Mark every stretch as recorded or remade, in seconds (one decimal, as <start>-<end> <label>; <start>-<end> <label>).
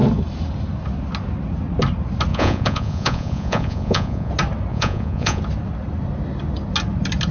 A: 0.0-2.3 recorded; 2.3-4.3 remade; 4.3-4.7 recorded; 4.7-5.4 remade; 5.4-7.3 recorded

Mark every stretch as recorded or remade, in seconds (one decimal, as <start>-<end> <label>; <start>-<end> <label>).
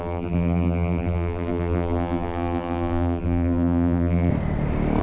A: 0.0-4.3 remade; 4.3-5.0 recorded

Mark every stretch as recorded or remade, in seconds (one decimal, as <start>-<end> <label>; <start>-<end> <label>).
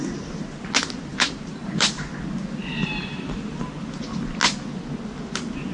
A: 0.0-1.1 recorded; 1.1-1.9 remade; 1.9-2.6 recorded; 2.6-3.3 remade; 3.3-5.7 recorded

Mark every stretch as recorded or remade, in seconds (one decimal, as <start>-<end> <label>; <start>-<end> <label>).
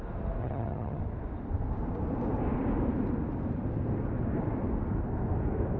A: 0.0-0.4 recorded; 0.4-1.0 remade; 1.0-5.8 recorded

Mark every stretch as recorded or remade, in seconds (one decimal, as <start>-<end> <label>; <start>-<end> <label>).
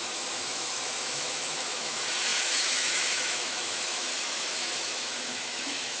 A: 0.0-6.0 remade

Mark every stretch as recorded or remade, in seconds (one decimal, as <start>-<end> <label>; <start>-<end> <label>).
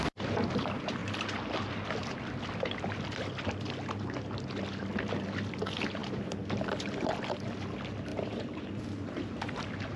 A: 0.0-8.1 recorded; 8.1-10.0 remade